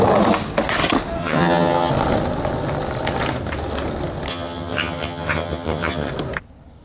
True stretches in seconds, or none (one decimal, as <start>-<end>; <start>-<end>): 0.0-1.2; 1.9-4.3; 6.1-6.8

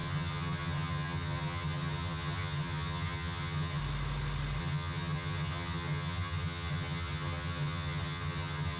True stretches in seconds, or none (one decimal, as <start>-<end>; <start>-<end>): 3.8-4.6

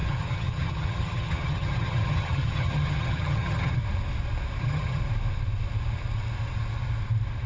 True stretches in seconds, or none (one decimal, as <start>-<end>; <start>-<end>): 3.8-4.6; 5.0-7.5

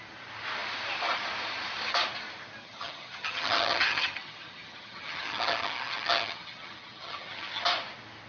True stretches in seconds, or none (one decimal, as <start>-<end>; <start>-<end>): 0.0-2.6; 7.6-8.3

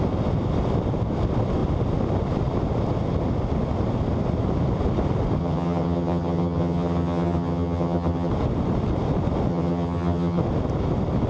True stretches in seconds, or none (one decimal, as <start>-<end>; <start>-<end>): 0.0-5.4; 8.3-9.5; 10.4-11.3

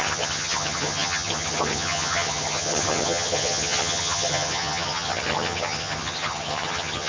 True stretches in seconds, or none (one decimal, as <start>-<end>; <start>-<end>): none